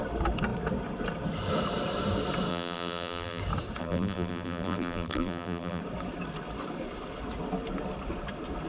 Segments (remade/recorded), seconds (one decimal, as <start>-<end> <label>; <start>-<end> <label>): 0.0-2.5 recorded; 2.5-3.4 remade; 3.4-3.8 recorded; 3.8-5.8 remade; 5.8-8.7 recorded